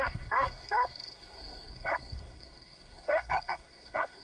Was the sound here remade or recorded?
remade